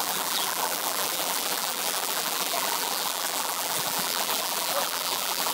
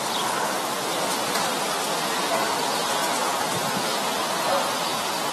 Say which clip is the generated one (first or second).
first